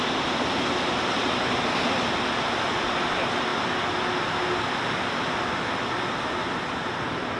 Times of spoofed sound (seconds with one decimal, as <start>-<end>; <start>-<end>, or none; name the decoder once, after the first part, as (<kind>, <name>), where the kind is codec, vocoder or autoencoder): none